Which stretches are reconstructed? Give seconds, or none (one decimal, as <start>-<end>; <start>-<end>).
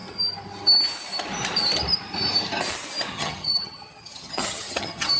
3.1-5.2